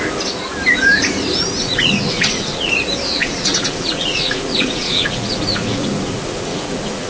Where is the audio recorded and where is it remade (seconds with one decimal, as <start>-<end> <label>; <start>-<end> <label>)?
0.0-1.6 recorded; 1.6-2.7 remade; 2.7-3.2 recorded; 3.2-7.1 remade